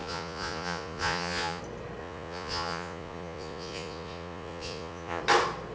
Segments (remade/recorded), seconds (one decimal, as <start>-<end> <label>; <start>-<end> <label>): 0.0-1.6 remade; 1.6-2.0 recorded; 2.0-5.2 remade; 5.2-5.7 recorded

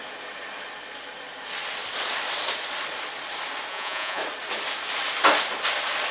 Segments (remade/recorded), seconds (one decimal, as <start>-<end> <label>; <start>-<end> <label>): 0.0-3.7 recorded; 3.7-4.2 remade; 4.2-6.1 recorded

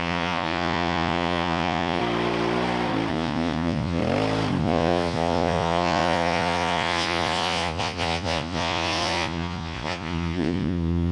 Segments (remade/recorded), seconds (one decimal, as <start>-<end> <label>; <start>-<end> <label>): 0.0-2.0 remade; 2.0-3.1 recorded; 3.1-4.0 remade; 4.0-4.6 recorded; 4.6-11.1 remade

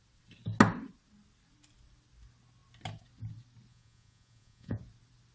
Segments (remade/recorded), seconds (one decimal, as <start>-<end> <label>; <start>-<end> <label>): 0.0-3.7 recorded; 3.7-4.8 remade; 4.8-5.3 recorded